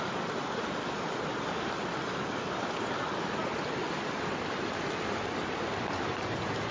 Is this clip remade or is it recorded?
remade